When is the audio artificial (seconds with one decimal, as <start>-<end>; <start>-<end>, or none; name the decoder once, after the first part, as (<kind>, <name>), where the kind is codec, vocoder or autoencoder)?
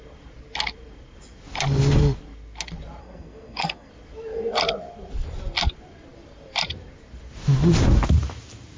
3.0-3.9 (codec, SNAC)